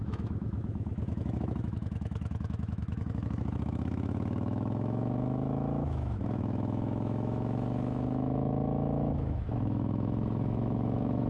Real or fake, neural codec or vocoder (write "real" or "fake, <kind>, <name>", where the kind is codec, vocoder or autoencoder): fake, autoencoder, DAC-VAE